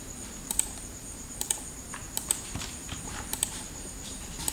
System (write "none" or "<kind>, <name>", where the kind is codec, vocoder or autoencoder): vocoder, BigVGAN v2